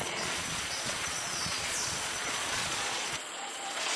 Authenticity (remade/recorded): remade